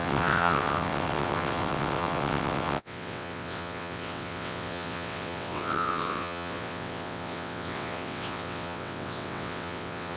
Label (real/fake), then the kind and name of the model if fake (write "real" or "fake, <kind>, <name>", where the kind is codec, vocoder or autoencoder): fake, vocoder, WaveNeXt